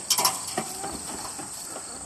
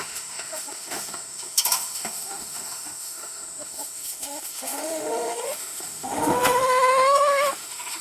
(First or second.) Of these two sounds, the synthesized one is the second